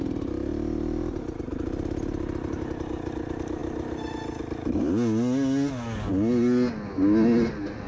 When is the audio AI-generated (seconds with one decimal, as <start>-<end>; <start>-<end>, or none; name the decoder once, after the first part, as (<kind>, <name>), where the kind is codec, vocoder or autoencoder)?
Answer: none